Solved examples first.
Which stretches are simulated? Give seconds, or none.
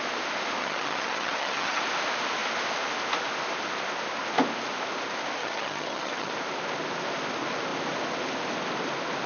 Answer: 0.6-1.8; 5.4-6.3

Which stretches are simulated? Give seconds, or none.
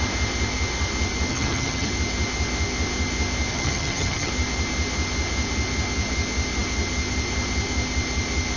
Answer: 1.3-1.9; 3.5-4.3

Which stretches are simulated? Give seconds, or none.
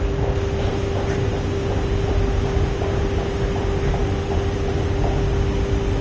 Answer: none